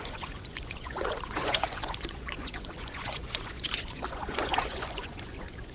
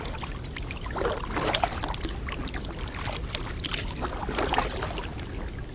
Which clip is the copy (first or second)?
first